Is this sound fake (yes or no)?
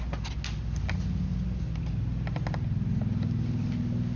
no